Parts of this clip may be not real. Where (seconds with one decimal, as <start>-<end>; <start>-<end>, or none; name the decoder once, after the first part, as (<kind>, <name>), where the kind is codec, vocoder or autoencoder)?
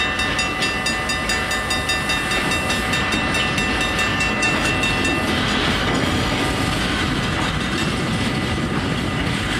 4.1-4.7 (codec, DAC); 5.8-6.4